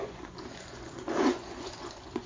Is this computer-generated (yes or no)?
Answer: yes